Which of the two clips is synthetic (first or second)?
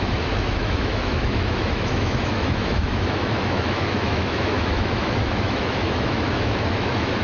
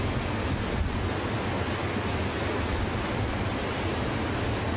first